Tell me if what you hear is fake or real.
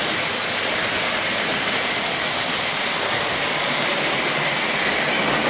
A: real